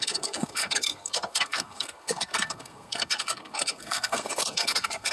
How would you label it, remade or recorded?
remade